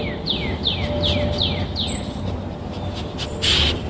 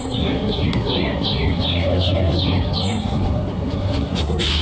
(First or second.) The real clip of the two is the first